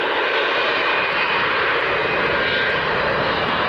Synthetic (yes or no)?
yes